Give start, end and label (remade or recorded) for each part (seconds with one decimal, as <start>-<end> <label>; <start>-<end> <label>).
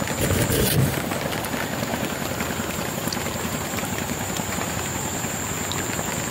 0.0-1.9 recorded; 1.9-5.4 remade; 5.4-6.3 recorded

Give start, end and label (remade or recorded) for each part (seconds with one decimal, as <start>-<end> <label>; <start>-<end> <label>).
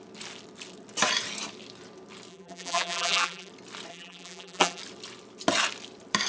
0.0-2.3 recorded; 2.3-3.5 remade; 3.5-3.9 recorded; 3.9-4.8 remade; 4.8-6.3 recorded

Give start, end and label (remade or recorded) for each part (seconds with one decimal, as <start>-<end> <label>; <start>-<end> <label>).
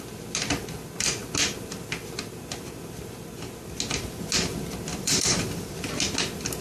0.0-4.9 recorded; 4.9-5.7 remade; 5.7-6.6 recorded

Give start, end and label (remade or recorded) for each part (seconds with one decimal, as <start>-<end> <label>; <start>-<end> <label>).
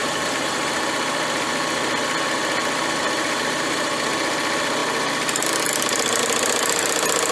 0.0-0.9 remade; 0.9-3.0 recorded; 3.0-3.9 remade; 3.9-7.3 recorded